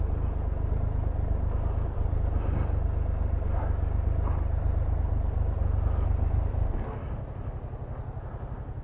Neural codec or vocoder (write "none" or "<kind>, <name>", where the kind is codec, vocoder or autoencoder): none